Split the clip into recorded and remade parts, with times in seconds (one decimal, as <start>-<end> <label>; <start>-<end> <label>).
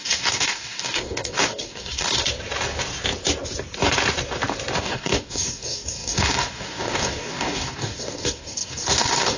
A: 0.0-2.2 remade; 2.2-4.8 recorded; 4.8-9.4 remade